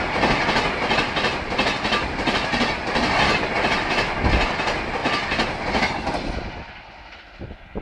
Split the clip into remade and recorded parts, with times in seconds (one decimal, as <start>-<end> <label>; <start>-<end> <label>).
0.0-7.8 recorded